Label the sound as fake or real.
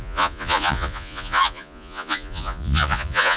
fake